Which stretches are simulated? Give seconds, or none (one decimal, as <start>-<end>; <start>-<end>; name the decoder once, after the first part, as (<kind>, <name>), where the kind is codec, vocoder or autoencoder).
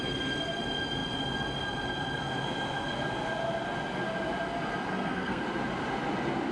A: 4.9-5.4 (codec, SNAC)